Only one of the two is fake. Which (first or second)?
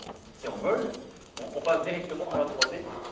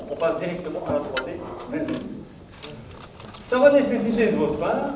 first